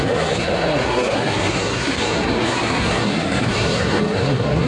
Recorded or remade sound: remade